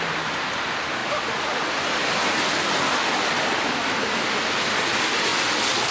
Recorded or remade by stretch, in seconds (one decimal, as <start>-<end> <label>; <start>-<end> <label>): 0.0-5.9 recorded